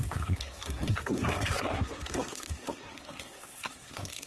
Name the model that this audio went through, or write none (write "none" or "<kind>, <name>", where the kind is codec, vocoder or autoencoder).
codec, SNAC